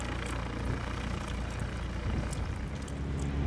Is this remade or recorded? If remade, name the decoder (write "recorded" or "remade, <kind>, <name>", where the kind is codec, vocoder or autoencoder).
recorded